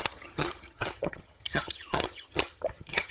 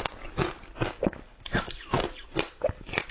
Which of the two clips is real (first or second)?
second